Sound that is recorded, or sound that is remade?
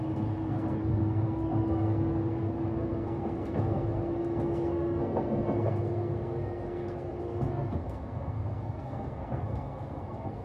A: remade